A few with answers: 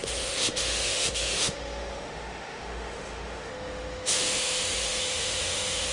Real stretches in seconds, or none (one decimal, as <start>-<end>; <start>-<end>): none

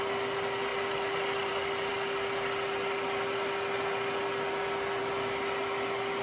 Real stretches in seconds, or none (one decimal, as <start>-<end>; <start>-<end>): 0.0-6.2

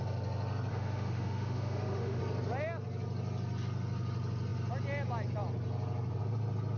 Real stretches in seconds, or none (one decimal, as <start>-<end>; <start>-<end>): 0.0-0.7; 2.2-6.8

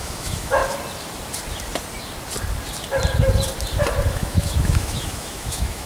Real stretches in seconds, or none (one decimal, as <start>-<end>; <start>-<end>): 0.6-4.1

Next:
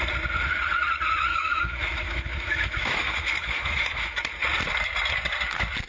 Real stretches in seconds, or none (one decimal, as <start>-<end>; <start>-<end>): 0.0-1.3; 4.2-5.9

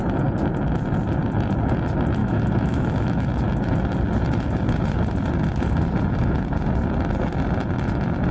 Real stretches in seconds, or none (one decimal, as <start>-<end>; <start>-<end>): 0.0-2.2; 3.3-8.3

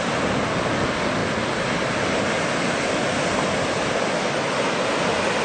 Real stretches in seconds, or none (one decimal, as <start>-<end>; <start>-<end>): 0.0-5.4